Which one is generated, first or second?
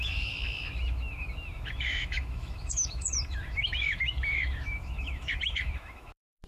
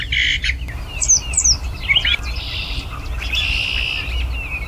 first